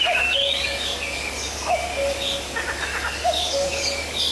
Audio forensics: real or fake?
fake